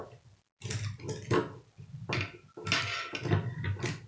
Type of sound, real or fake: real